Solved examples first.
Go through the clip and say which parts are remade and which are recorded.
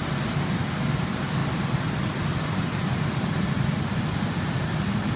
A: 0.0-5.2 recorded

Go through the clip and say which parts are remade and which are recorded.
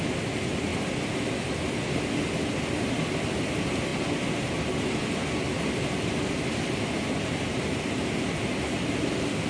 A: 0.0-9.5 recorded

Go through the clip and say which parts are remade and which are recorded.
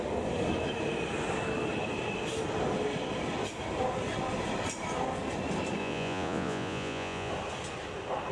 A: 0.0-5.8 recorded; 5.8-7.3 remade; 7.3-8.3 recorded